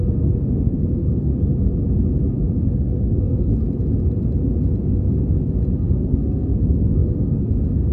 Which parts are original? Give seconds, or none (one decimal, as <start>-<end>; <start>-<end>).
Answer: 1.3-2.7; 3.5-5.7